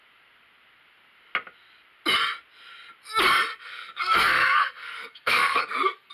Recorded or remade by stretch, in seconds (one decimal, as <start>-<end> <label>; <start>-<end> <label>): 0.0-3.5 recorded; 3.5-6.1 remade